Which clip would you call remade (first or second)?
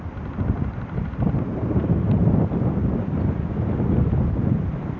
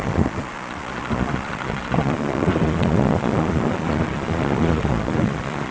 second